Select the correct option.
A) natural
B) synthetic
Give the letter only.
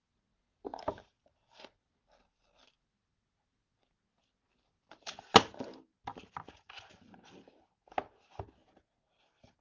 A